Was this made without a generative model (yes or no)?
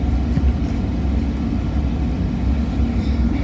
yes